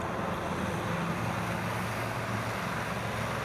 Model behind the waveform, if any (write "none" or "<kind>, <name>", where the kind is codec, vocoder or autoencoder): none